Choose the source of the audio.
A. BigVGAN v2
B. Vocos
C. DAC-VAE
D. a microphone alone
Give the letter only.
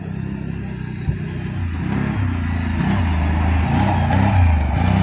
D